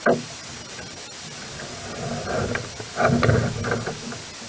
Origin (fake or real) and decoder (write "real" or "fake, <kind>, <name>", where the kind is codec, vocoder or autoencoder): real